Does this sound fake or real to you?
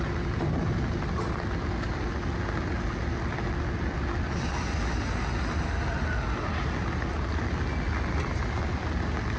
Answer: real